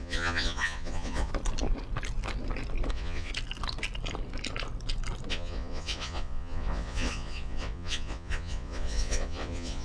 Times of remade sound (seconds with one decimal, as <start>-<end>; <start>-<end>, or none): 0.0-1.3; 2.9-3.3; 5.3-9.8